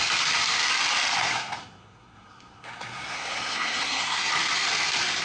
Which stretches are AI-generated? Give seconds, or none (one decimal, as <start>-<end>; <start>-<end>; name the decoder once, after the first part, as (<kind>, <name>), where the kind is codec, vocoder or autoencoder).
1.2-4.3 (codec, SNAC)